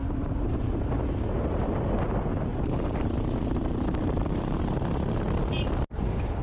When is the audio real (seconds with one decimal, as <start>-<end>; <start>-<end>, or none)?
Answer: 0.7-2.5; 4.6-6.4